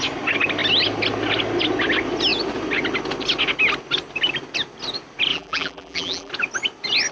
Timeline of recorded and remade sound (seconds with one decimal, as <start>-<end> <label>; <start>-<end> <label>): 0.0-5.3 recorded; 5.3-6.3 remade; 6.3-7.1 recorded